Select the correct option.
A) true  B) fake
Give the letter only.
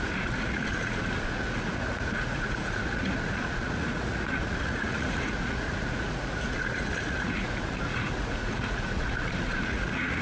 B